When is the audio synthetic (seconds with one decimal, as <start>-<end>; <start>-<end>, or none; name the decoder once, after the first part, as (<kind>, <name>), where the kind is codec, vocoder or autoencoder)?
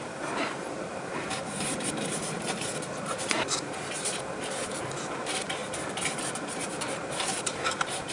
0.0-5.6 (vocoder, BigVGAN v2); 7.1-8.1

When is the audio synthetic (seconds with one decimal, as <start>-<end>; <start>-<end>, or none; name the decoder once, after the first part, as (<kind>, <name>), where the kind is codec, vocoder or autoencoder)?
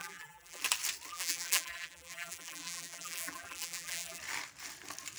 0.0-0.6 (vocoder, BigVGAN v2); 1.1-4.2